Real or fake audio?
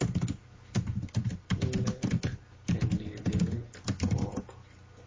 real